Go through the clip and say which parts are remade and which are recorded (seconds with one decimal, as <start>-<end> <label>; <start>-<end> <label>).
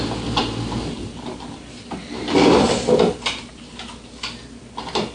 0.0-5.1 recorded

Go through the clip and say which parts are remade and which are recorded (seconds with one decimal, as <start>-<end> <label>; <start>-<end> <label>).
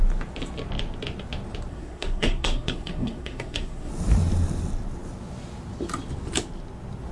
0.0-1.7 recorded; 1.7-3.9 remade; 3.9-7.1 recorded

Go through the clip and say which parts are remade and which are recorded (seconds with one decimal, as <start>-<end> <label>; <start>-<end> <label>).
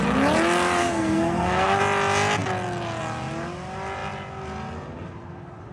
0.0-0.8 recorded; 0.8-1.8 remade; 1.8-5.7 recorded